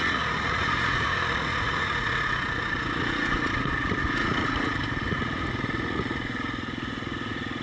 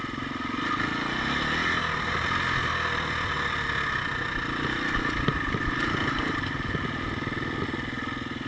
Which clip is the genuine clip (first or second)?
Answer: second